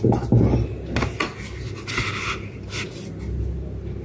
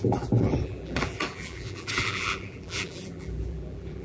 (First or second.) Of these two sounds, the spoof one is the second